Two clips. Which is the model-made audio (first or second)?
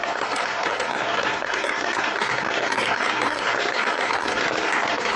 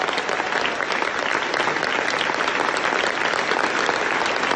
first